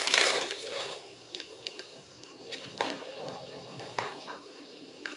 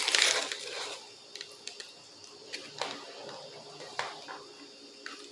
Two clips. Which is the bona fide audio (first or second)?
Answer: second